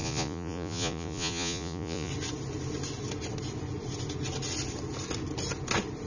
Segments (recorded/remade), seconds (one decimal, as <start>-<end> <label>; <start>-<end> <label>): 0.0-2.1 remade; 2.1-6.1 recorded